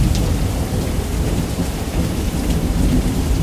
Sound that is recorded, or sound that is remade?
remade